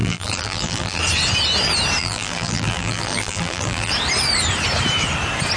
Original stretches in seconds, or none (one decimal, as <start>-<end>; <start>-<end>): 1.0-2.0; 3.9-5.6